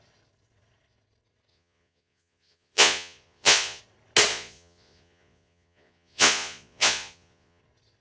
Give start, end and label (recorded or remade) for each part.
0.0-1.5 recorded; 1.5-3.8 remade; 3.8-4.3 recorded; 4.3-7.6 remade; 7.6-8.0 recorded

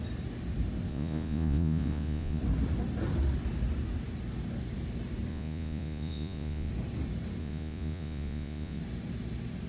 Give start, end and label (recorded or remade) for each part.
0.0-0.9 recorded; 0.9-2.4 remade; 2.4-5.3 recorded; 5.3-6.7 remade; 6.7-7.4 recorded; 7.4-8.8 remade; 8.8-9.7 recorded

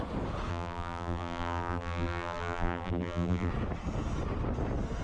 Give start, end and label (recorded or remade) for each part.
0.0-0.5 recorded; 0.5-3.5 remade; 3.5-5.0 recorded